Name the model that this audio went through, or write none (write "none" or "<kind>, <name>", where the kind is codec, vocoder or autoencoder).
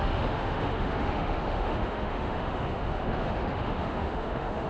autoencoder, DAC-VAE